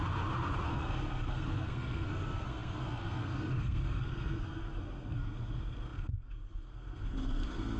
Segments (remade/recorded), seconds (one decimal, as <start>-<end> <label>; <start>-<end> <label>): 0.0-0.6 recorded; 0.6-7.8 remade